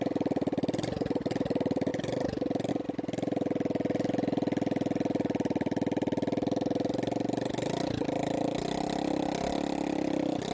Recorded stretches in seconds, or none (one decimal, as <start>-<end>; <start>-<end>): 0.0-10.5